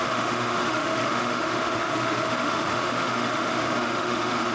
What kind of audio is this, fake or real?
fake